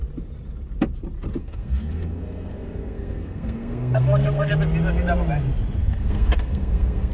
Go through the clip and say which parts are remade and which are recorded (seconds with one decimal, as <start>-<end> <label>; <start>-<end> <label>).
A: 0.0-1.4 recorded; 1.4-4.5 remade; 4.5-5.8 recorded; 5.8-7.1 remade